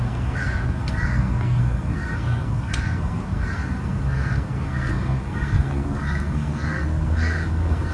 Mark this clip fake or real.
fake